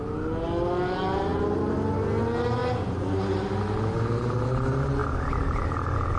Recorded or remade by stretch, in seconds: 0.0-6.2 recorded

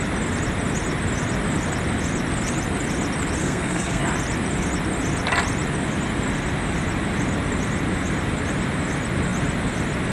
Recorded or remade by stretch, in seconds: 0.0-3.4 recorded; 3.4-4.0 remade; 4.0-10.1 recorded